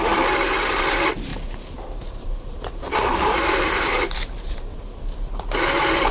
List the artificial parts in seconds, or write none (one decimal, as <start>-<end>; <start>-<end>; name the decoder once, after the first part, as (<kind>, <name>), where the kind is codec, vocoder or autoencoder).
1.3-5.0 (vocoder, BigVGAN v2)